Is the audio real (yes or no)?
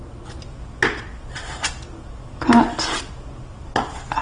yes